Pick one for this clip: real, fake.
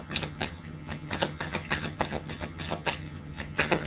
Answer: fake